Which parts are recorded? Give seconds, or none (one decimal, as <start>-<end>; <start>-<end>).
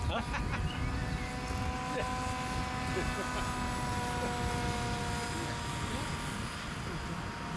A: 0.0-7.6